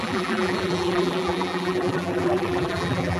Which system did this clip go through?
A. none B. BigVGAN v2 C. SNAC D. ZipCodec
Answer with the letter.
B